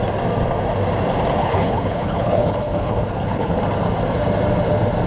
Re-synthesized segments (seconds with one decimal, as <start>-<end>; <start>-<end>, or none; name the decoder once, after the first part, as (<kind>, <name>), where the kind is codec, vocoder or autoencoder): 1.4-3.6 (codec, HILCodec)